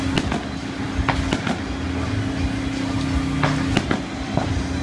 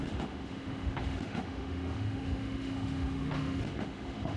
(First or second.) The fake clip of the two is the second